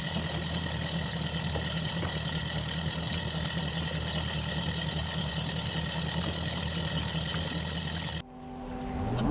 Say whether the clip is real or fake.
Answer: real